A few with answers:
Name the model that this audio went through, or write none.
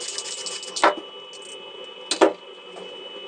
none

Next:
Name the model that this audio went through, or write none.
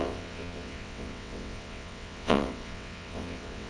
vocoder, WaveNeXt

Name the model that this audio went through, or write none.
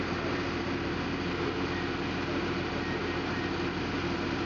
none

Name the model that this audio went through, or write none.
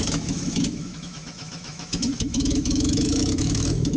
autoencoder, DAC-VAE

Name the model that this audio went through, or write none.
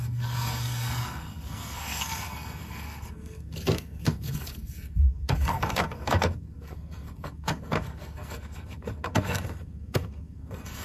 codec, SNAC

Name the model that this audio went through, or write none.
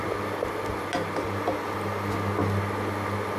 none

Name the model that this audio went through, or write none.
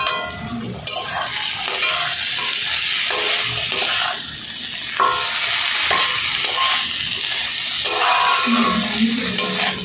none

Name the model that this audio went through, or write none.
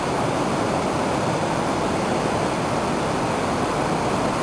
none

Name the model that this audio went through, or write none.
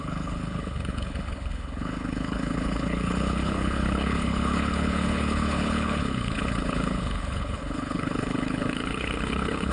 codec, HILCodec